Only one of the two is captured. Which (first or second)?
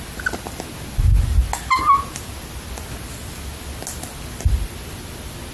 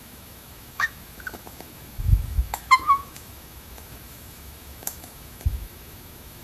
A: first